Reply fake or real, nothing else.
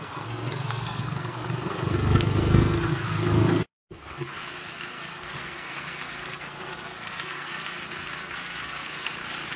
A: fake